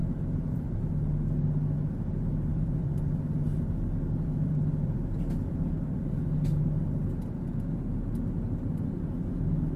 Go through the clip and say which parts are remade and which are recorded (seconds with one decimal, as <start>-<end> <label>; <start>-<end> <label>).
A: 0.0-0.8 remade; 0.8-2.5 recorded; 2.5-6.6 remade; 6.6-9.8 recorded